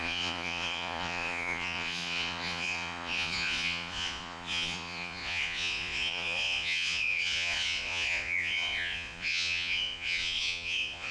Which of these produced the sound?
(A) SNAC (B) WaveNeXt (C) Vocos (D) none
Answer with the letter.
C